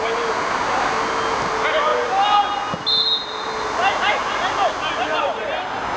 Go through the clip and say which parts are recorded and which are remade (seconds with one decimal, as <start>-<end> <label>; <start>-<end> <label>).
0.0-6.0 recorded